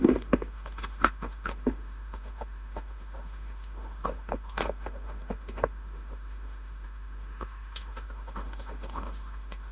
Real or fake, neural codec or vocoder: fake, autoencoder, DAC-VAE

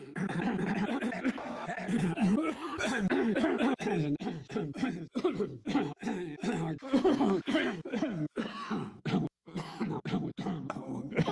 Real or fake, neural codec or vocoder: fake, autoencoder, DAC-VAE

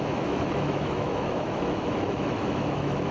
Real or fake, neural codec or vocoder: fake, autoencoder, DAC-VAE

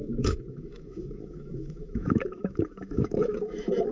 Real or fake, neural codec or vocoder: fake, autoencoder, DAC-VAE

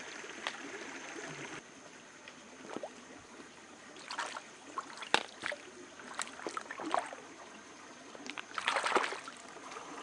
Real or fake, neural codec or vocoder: real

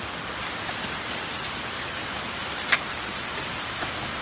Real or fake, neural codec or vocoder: real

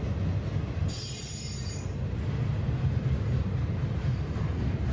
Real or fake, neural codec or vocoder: real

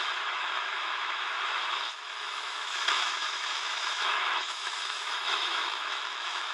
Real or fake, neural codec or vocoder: fake, autoencoder, DAC-VAE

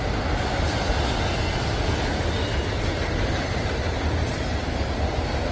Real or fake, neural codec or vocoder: real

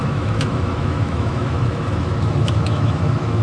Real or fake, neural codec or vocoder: fake, autoencoder, DAC-VAE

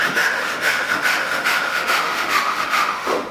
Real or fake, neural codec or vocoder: fake, autoencoder, DAC-VAE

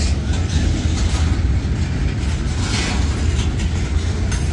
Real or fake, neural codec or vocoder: real